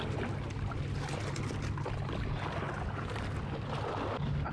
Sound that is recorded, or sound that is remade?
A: recorded